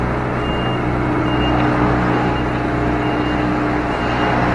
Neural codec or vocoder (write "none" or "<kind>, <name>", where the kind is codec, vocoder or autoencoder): none